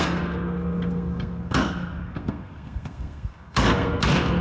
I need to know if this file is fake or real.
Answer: fake